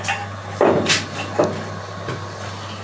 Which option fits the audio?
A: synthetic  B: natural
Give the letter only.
B